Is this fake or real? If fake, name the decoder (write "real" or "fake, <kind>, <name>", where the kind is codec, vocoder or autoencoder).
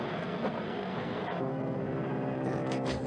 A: fake, codec, SNAC